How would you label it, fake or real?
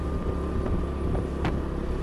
real